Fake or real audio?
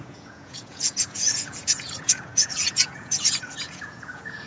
fake